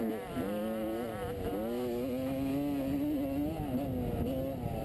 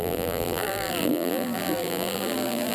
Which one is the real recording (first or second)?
first